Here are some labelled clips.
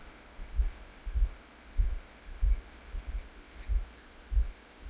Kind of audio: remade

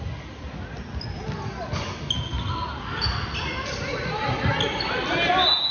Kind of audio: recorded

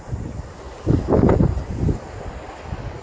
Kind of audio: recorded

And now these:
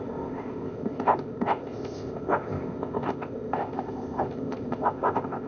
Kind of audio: remade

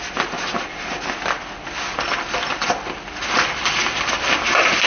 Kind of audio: recorded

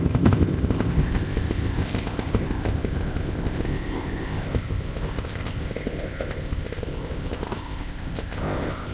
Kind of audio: remade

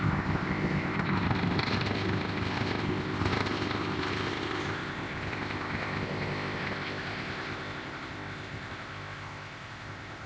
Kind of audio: remade